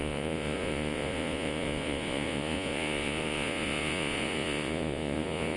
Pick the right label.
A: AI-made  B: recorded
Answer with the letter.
A